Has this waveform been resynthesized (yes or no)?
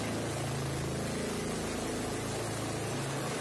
no